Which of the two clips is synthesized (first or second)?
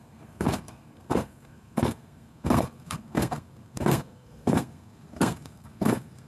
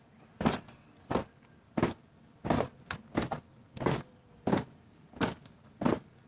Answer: first